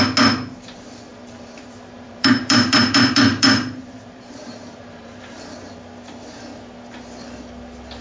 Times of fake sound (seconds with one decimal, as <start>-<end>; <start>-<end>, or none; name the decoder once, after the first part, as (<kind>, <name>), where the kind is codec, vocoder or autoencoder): 1.1-5.7 (vocoder, BigVGAN v2)